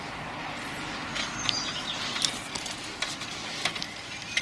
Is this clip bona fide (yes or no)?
yes